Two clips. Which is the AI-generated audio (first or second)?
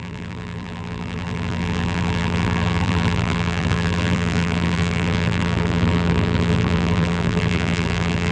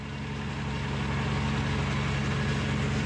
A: first